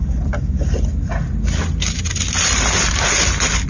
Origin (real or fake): real